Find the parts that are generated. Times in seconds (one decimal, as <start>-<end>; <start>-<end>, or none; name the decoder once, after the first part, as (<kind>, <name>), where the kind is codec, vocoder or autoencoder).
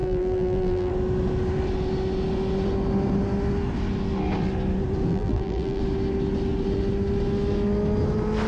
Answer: 0.0-0.9 (vocoder, BigVGAN v2); 5.1-5.8